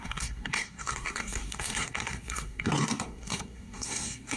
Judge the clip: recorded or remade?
remade